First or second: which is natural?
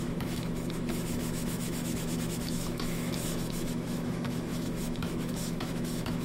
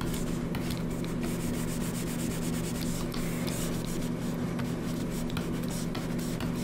second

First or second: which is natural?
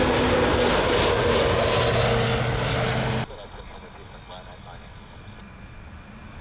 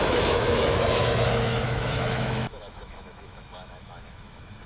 first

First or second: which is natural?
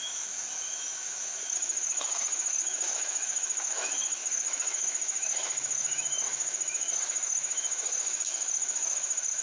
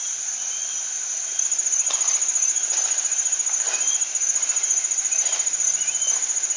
second